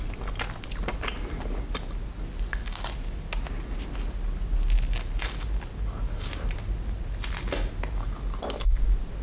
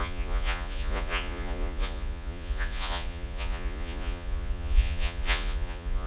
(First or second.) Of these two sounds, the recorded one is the first